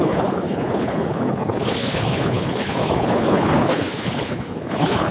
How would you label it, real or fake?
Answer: fake